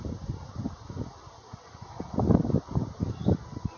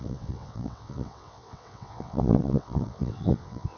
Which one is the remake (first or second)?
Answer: second